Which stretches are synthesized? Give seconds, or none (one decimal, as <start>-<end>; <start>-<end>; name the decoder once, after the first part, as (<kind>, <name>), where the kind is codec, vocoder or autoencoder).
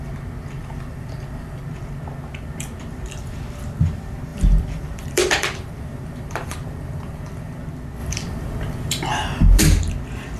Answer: 0.6-1.6 (vocoder, BigVGAN v2); 4.3-7.6; 8.0-9.6